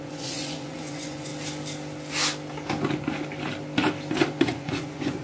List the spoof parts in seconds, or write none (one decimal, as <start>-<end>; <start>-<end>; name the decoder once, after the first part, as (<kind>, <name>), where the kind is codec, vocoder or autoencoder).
0.0-1.3 (vocoder, Vocos); 4.4-5.2